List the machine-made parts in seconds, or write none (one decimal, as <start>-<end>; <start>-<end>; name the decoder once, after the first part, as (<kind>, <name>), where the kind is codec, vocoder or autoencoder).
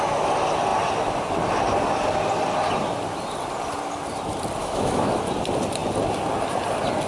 4.6-5.2 (autoencoder, DAC-VAE)